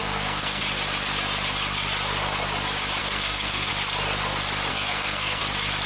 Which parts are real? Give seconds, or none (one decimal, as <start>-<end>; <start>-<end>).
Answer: 0.6-3.0; 3.7-4.7; 5.4-5.9

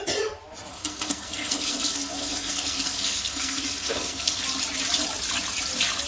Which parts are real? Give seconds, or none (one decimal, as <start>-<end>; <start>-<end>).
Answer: 0.0-0.7; 4.4-6.1